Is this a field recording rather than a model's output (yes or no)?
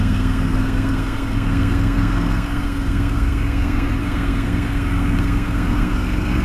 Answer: no